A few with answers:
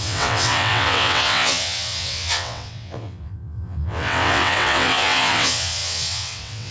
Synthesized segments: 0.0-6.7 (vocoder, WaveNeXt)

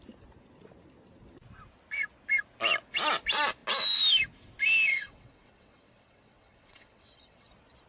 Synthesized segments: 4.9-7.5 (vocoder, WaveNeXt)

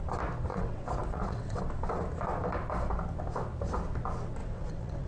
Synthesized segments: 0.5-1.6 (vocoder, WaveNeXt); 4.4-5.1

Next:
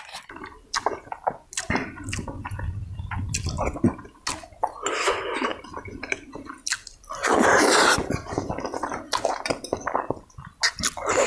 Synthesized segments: none

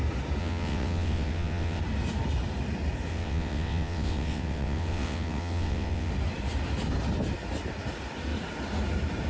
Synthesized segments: 0.4-1.8 (vocoder, WaveNeXt); 3.1-6.1

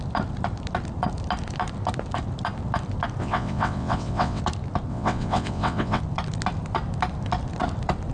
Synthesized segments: 3.2-4.4 (vocoder, WaveNeXt); 4.9-6.0

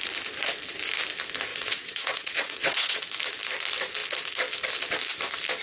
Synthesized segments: 1.5-3.0 (vocoder, WaveNeXt)

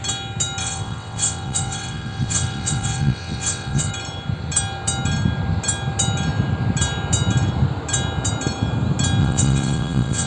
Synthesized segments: 0.6-3.9 (vocoder, WaveNeXt); 9.2-10.3